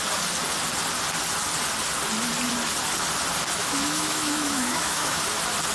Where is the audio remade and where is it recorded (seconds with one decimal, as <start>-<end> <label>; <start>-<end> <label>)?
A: 0.0-3.6 recorded; 3.6-5.2 remade; 5.2-5.7 recorded